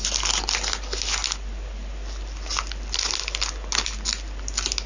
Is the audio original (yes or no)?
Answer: yes